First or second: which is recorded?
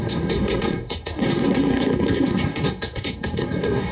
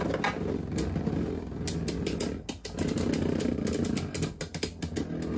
second